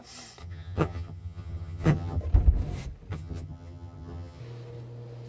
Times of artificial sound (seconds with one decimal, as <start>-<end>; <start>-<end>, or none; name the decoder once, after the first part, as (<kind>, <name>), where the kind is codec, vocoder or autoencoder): 0.4-2.2 (vocoder, HiFi-GAN); 3.1-4.4